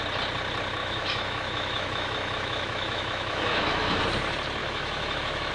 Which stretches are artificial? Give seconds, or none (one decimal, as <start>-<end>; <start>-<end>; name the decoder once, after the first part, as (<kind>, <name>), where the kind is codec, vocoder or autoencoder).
0.8-4.0 (autoencoder, DAC-VAE); 4.6-5.5

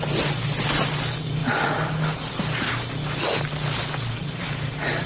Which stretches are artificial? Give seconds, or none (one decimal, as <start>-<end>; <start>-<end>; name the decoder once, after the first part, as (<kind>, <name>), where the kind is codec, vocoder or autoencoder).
none

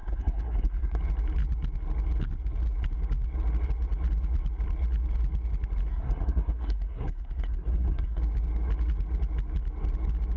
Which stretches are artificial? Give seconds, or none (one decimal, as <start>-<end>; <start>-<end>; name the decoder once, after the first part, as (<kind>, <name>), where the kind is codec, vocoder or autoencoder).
0.0-1.0 (codec, SNAC); 5.9-8.2

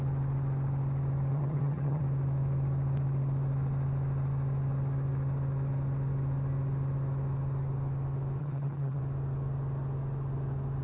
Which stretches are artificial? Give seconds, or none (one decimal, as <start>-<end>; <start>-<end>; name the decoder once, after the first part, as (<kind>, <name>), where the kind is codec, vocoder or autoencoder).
1.3-2.0 (vocoder, HiFi-GAN); 8.4-9.0

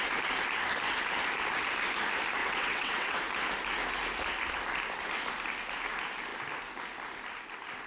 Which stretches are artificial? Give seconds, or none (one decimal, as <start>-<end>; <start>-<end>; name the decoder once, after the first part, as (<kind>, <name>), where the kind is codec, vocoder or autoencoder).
2.4-3.2 (vocoder, WaveNeXt)